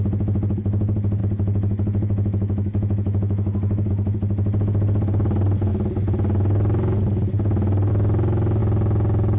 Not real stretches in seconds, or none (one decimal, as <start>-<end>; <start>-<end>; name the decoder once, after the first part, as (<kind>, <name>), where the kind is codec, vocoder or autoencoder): 1.2-3.9 (autoencoder, DAC-VAE)

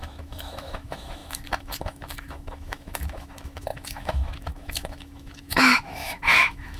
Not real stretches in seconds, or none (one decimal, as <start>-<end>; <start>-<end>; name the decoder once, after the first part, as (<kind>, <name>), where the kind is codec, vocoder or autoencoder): 0.0-6.8 (autoencoder, DAC-VAE)

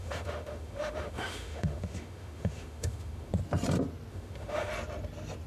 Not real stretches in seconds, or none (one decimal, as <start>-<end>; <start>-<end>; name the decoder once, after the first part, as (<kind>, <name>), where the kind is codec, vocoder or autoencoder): 0.0-3.3 (autoencoder, DAC-VAE); 4.1-4.7

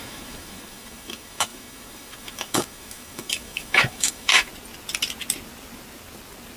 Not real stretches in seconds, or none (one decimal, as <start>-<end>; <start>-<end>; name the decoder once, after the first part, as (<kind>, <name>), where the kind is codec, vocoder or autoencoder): 0.0-4.5 (autoencoder, DAC-VAE)

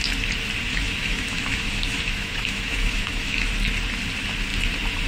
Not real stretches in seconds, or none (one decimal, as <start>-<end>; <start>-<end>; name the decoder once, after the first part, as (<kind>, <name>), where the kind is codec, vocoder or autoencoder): 0.7-3.5 (autoencoder, DAC-VAE)

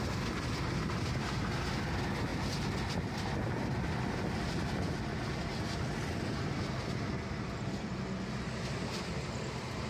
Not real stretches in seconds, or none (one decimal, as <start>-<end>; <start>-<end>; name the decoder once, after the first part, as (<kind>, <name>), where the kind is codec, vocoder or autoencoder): none

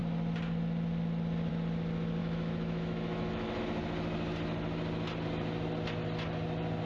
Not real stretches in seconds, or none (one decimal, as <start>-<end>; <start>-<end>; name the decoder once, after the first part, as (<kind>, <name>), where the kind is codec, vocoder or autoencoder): 2.2-3.6 (autoencoder, DAC-VAE)